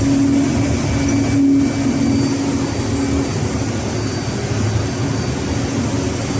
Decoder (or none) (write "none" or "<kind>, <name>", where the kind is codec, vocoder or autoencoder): none